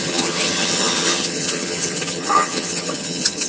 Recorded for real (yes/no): no